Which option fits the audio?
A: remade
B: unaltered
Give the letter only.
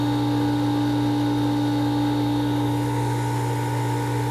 B